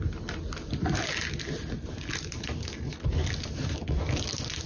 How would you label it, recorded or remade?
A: recorded